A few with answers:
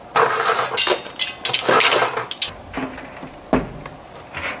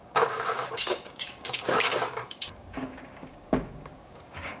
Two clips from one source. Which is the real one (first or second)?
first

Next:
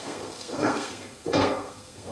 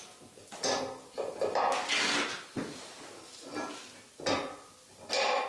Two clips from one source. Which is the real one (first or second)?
second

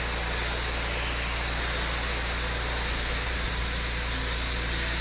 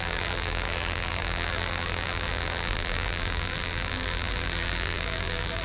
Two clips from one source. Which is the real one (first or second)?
first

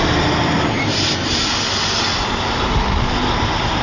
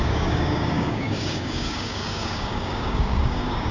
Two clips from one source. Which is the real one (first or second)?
first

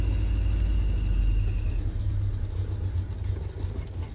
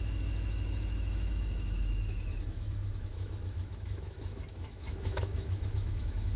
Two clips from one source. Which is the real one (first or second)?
first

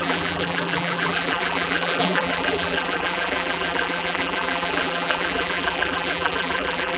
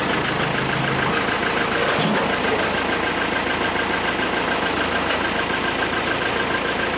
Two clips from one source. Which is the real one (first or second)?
second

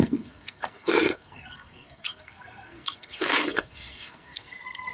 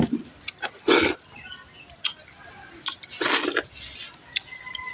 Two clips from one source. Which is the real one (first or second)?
second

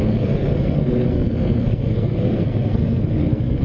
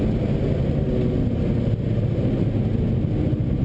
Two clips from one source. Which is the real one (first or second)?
second